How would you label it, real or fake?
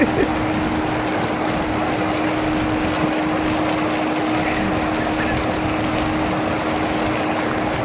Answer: real